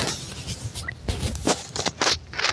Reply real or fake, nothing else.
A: real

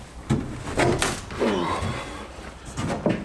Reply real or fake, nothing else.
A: real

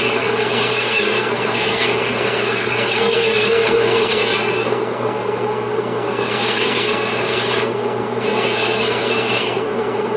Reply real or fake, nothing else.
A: fake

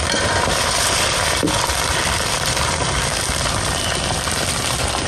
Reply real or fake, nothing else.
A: fake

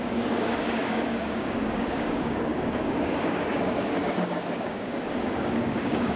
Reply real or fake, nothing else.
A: fake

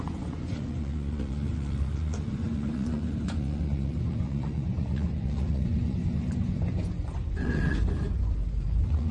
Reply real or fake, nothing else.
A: fake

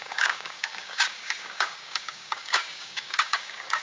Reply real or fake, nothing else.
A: fake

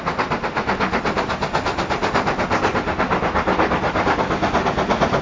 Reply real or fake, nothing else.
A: real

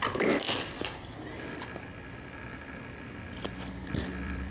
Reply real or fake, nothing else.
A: fake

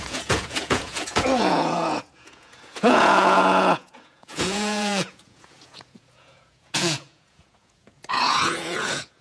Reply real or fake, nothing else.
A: fake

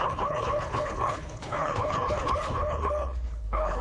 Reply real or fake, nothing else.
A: fake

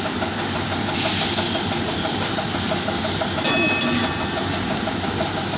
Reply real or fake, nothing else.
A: real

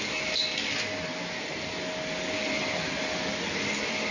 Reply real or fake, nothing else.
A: real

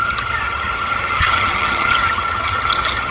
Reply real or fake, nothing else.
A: fake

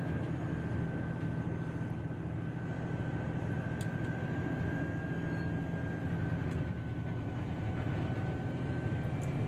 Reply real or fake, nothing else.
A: real